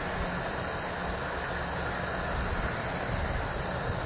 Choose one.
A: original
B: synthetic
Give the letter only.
A